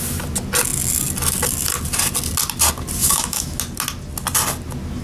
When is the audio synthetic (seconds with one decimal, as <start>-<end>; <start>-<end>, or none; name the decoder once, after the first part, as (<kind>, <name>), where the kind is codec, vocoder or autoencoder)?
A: 3.0-3.6 (autoencoder, DAC-VAE)